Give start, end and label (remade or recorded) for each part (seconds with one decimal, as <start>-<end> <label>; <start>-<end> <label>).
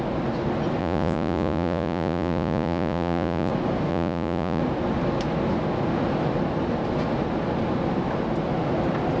0.0-0.8 recorded; 0.8-3.5 remade; 3.5-3.9 recorded; 3.9-4.6 remade; 4.6-9.2 recorded